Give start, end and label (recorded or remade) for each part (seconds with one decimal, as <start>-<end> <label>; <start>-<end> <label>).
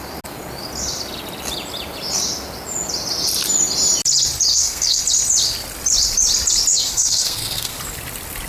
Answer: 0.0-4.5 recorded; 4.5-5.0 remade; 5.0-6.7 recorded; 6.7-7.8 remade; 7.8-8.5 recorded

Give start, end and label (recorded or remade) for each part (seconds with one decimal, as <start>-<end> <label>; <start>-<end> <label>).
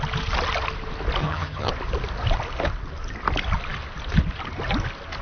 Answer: 0.0-1.2 recorded; 1.2-1.7 remade; 1.7-5.2 recorded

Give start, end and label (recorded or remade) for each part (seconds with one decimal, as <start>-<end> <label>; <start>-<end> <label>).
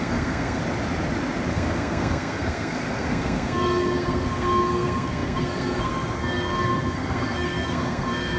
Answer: 0.0-0.6 remade; 0.6-1.5 recorded; 1.5-8.4 remade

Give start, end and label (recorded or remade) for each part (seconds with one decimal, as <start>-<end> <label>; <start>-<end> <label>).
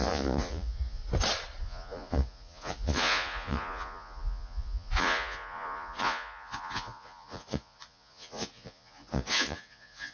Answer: 0.0-1.0 remade; 1.0-1.6 recorded; 1.6-10.1 remade